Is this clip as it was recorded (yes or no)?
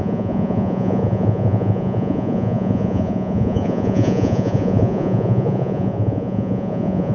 no